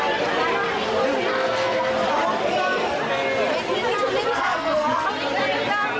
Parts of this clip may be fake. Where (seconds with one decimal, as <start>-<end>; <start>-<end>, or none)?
1.3-1.9; 4.3-5.1